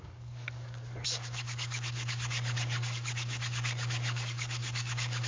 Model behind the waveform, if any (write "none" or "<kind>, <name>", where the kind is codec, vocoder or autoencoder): codec, DAC